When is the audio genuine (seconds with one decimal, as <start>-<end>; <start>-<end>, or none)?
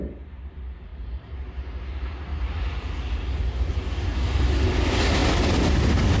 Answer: 0.0-0.9; 1.8-2.3; 4.4-5.2; 5.8-6.2